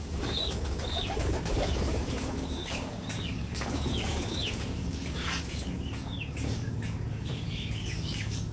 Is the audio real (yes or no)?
no